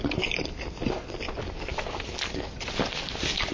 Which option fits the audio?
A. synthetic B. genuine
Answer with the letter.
B